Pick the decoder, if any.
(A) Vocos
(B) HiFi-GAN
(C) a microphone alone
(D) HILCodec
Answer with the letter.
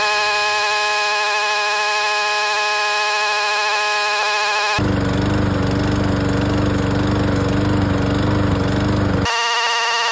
C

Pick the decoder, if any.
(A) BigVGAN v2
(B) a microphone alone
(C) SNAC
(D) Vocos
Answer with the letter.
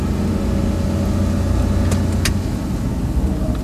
B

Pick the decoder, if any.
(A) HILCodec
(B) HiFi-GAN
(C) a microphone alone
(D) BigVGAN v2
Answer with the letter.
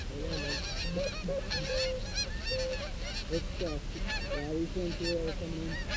C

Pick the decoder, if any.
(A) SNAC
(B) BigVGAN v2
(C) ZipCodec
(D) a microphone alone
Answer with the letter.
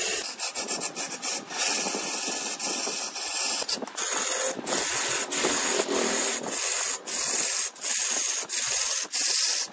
D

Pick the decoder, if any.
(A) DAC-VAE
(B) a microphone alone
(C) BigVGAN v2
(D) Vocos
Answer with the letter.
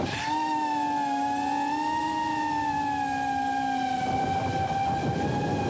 B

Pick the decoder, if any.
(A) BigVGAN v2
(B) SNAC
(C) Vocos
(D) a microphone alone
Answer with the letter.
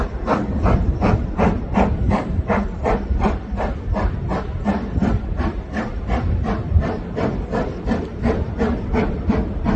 A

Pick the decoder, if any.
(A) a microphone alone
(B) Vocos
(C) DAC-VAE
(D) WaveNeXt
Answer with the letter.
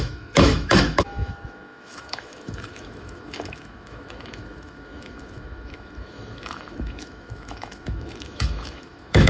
C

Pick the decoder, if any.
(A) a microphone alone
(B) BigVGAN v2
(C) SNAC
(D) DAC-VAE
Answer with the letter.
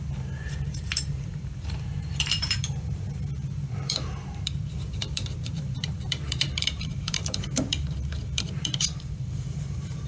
B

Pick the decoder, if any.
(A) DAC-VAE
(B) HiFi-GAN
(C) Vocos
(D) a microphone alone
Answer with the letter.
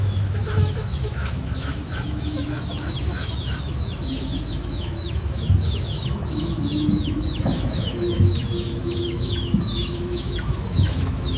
A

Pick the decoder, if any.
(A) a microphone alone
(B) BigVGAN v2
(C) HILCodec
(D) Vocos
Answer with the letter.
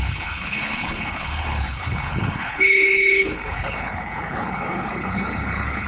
C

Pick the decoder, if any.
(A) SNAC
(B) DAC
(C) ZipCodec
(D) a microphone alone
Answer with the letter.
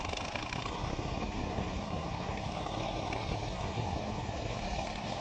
A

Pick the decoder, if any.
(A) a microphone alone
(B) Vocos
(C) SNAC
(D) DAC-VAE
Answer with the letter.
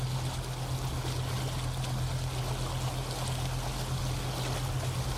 A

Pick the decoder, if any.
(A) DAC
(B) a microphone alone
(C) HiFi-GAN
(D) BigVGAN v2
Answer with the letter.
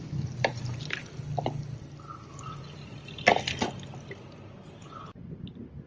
B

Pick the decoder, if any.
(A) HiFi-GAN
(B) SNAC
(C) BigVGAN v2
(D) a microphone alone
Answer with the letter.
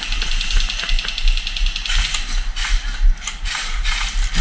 D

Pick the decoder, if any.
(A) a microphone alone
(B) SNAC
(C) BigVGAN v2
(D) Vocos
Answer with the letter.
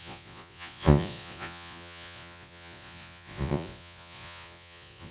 D